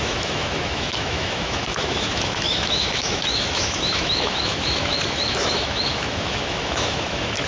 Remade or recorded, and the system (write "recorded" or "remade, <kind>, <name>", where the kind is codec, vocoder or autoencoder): remade, autoencoder, DAC-VAE